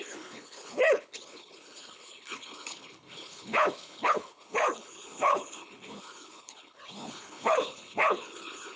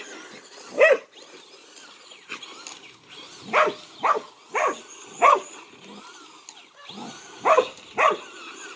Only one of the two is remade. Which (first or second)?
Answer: first